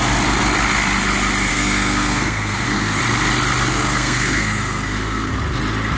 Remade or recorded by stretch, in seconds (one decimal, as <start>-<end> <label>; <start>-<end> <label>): 0.0-1.5 recorded; 1.5-3.0 remade; 3.0-3.7 recorded; 3.7-5.3 remade; 5.3-6.0 recorded